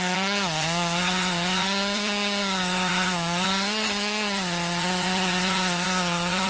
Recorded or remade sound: remade